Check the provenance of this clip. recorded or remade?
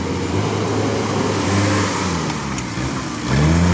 recorded